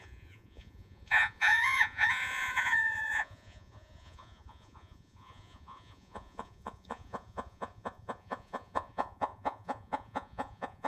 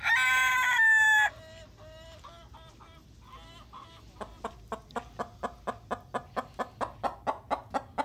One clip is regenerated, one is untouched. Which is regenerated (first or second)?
first